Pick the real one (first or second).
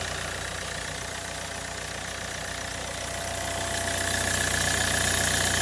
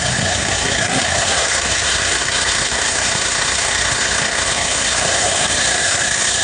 first